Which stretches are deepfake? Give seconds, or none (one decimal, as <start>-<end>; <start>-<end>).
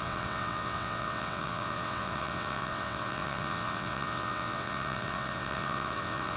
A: 0.0-6.4